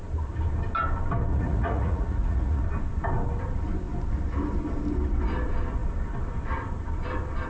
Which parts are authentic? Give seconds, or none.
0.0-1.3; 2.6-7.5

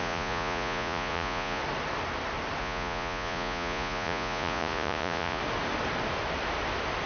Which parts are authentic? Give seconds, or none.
1.6-2.6; 5.4-7.1

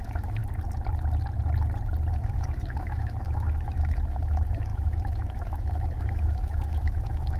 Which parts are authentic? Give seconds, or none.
0.4-2.1

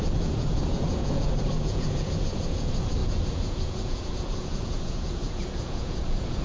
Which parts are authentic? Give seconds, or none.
none

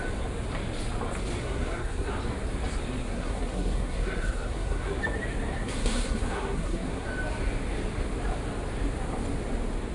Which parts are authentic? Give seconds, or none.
0.0-1.4; 2.1-3.0; 5.0-5.5; 7.1-9.9

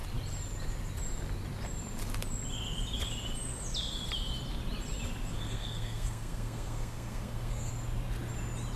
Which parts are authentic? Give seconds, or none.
0.0-5.3; 7.7-8.8

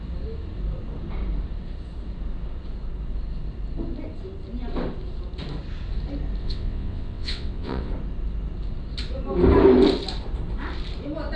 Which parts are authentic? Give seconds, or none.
0.0-6.4; 7.9-11.4

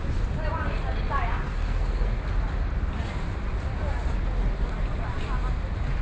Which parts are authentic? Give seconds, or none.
0.0-1.3; 2.2-6.0